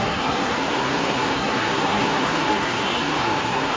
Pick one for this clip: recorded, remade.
remade